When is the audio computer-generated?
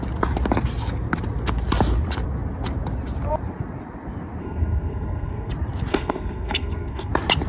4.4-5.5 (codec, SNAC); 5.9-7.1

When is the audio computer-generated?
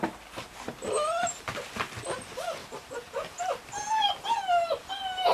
none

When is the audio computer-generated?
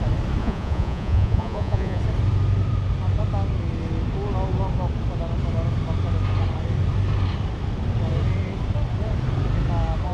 0.4-2.0 (vocoder, Vocos)